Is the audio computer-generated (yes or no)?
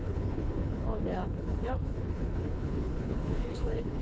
yes